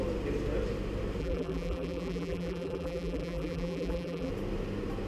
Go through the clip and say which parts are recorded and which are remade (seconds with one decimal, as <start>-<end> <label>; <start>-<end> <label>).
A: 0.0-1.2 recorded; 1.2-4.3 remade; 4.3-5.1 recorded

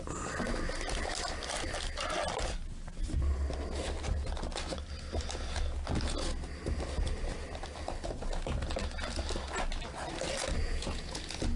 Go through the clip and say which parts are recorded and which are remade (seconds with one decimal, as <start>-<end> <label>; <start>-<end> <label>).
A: 0.0-10.6 recorded; 10.6-11.2 remade; 11.2-11.6 recorded

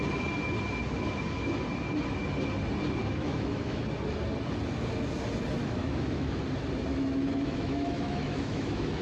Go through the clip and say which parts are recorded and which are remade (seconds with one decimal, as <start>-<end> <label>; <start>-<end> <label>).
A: 0.0-3.0 recorded; 3.0-3.8 remade; 3.8-5.6 recorded; 5.6-6.4 remade; 6.4-6.9 recorded; 6.9-9.0 remade